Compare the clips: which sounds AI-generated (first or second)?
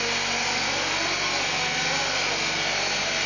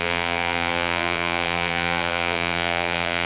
second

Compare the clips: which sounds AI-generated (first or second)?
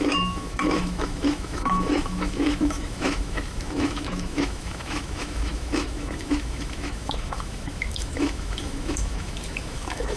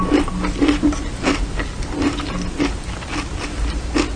first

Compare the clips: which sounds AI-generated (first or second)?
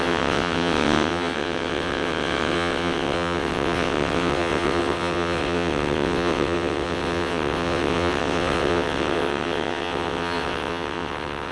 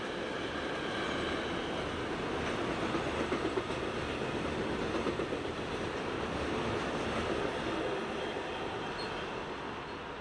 first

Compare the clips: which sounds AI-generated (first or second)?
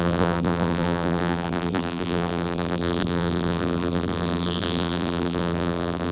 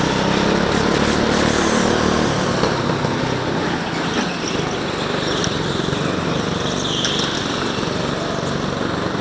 first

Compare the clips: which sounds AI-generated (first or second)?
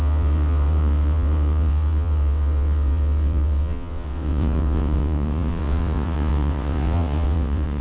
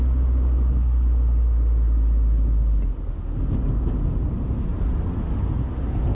first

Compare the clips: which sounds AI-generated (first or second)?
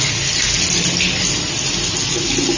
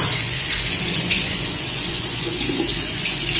second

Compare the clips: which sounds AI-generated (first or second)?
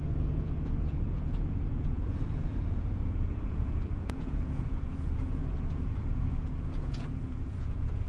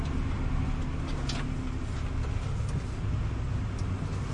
first